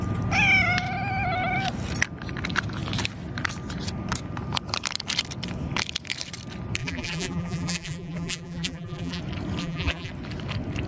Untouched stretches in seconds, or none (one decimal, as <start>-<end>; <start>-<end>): 0.0-6.8; 9.2-9.6; 10.1-10.9